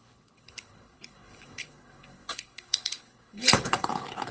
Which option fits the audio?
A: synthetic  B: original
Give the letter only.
A